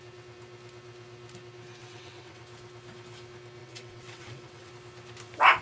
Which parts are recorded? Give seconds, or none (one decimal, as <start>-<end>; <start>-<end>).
0.0-1.8; 2.4-3.6; 4.7-5.6